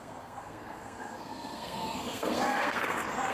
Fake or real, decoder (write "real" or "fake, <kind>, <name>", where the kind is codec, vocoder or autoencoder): fake, codec, SNAC